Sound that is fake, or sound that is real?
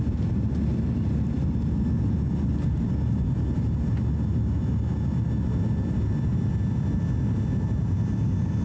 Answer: real